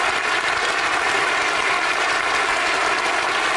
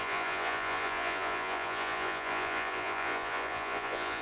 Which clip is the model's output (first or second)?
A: second